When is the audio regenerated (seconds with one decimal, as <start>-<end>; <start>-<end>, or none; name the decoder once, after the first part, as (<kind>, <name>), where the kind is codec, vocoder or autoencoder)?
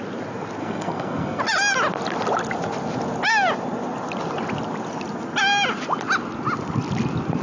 0.6-1.4 (codec, SNAC)